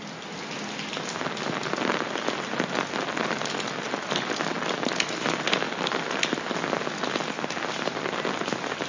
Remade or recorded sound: recorded